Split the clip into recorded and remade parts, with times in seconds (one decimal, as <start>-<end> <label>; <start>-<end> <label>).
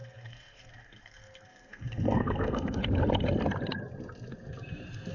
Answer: 0.0-2.8 remade; 2.8-5.1 recorded